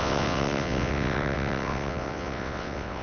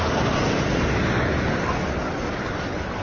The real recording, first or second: second